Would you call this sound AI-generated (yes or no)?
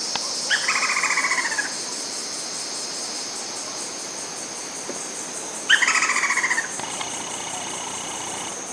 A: no